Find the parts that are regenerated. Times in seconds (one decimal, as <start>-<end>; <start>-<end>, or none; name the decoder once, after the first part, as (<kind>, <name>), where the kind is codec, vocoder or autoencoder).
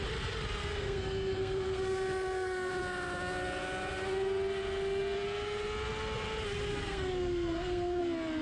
0.6-2.7 (codec, SNAC); 6.7-8.0